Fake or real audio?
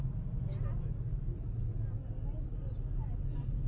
real